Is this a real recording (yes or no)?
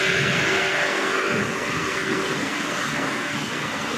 no